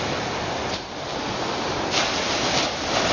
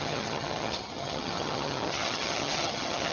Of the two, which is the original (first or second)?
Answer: first